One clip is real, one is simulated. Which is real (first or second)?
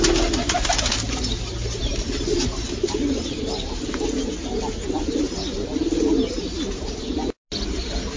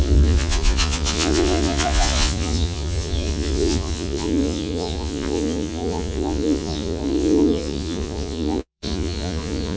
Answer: first